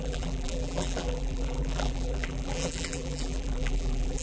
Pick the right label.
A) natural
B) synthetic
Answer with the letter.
B